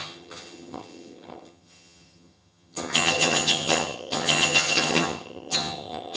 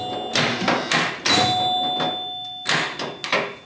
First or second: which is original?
second